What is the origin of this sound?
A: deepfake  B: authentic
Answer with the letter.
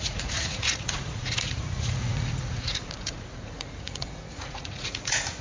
A